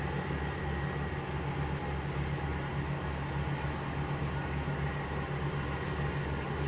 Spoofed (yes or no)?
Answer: no